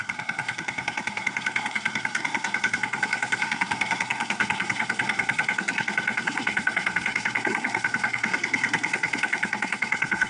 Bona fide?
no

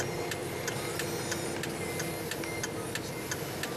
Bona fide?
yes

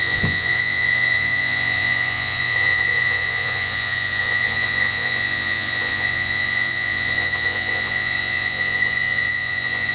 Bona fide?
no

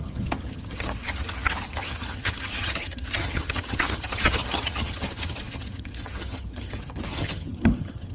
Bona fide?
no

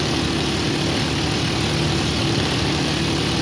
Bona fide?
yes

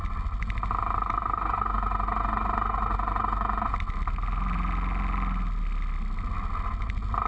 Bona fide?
yes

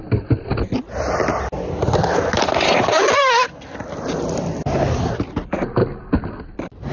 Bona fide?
yes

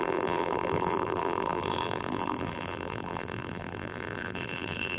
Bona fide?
no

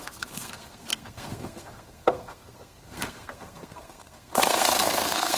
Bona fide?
no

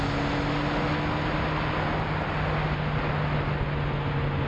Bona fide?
yes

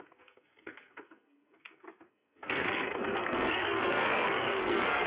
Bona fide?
no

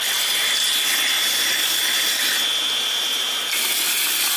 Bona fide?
yes